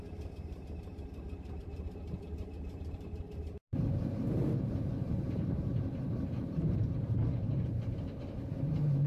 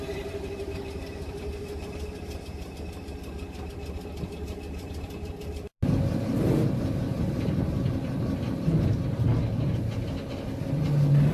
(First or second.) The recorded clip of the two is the second